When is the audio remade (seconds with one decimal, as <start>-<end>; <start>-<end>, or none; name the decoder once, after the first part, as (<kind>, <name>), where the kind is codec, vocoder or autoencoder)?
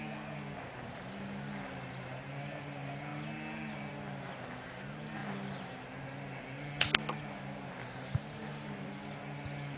8.5-9.0 (vocoder, BigVGAN v2)